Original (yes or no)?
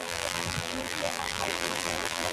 no